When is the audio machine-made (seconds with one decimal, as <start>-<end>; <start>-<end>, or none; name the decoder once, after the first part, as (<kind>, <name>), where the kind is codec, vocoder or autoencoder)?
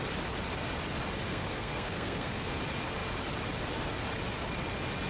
1.3-2.6 (codec, SNAC)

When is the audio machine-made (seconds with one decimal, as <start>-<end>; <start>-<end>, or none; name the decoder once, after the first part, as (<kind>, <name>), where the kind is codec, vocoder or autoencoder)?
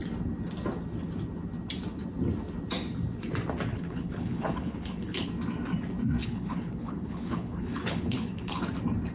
3.7-5.3 (codec, HILCodec); 6.2-8.6